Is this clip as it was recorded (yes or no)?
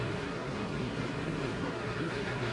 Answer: no